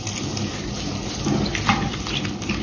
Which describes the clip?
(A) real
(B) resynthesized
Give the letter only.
A